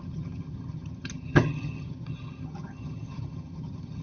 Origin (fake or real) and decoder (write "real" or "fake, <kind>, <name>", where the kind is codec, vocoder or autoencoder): fake, vocoder, HiFi-GAN